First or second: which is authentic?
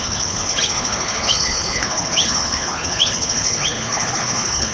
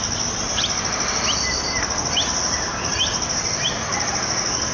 second